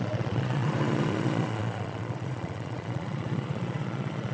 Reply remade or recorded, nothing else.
remade